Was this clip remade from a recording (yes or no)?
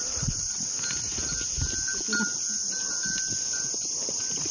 no